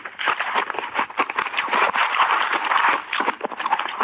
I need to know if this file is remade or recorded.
recorded